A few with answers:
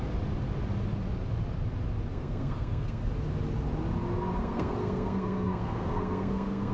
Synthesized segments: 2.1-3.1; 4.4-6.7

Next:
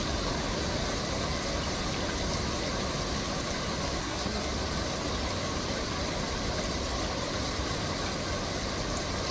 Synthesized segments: 4.0-4.5